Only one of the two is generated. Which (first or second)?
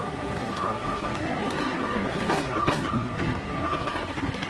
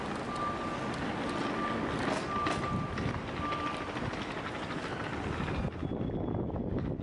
first